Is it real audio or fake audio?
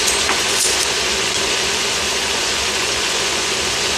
fake